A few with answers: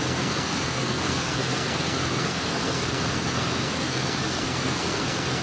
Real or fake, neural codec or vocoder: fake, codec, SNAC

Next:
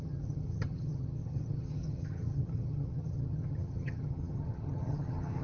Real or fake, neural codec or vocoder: fake, vocoder, HiFi-GAN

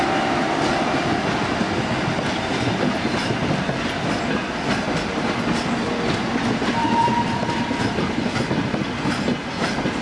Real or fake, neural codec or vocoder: real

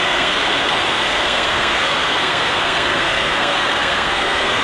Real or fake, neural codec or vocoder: fake, codec, SNAC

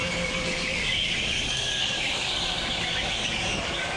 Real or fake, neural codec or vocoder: fake, codec, DAC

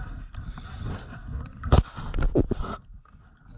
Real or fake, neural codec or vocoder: real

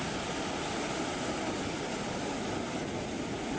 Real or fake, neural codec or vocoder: real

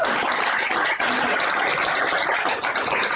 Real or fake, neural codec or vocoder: real